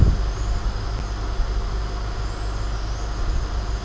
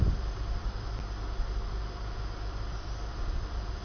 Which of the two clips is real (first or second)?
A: first